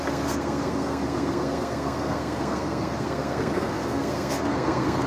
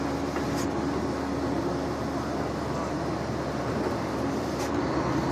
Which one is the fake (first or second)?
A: first